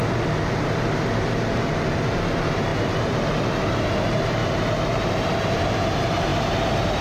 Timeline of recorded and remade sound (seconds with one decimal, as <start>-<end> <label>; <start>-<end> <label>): 0.0-0.6 recorded; 0.6-4.4 remade; 4.4-4.9 recorded; 4.9-7.0 remade